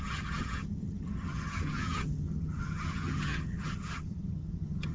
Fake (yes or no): yes